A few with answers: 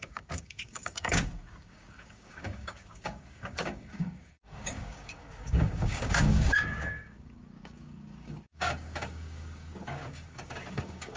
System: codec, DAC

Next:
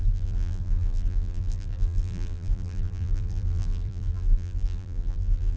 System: vocoder, BigVGAN v2